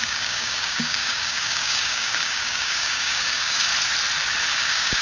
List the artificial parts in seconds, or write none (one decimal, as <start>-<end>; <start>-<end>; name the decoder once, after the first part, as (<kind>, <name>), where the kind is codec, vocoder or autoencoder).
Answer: 0.0-3.7 (codec, DAC); 4.5-5.0